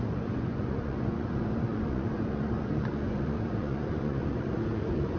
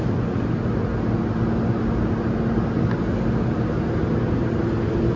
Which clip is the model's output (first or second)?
first